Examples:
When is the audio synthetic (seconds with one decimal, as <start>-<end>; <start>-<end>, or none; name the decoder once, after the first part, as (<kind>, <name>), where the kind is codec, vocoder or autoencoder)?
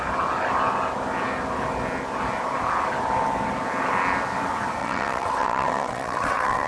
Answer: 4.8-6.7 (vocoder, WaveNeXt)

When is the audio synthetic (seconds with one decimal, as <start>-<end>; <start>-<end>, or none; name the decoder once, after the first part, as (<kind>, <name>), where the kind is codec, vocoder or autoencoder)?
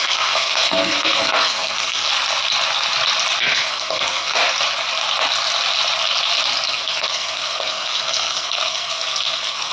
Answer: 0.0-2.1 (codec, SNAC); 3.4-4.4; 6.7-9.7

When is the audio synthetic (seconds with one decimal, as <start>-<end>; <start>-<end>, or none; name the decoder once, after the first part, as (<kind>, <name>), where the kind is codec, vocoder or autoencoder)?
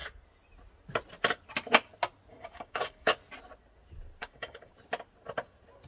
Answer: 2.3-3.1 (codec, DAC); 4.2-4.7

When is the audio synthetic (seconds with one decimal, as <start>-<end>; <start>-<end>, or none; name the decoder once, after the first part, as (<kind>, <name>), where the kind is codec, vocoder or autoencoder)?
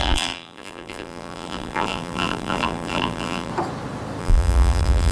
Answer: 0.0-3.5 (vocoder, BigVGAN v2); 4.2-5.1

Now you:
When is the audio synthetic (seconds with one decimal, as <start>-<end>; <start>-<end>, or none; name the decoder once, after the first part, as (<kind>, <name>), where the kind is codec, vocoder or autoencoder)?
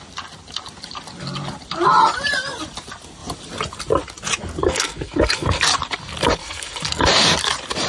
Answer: 4.6-5.6 (codec, SNAC); 6.4-7.0